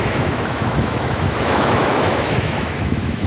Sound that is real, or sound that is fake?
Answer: fake